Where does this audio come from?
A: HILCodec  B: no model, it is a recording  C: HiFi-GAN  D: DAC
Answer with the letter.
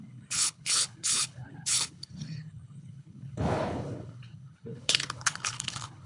A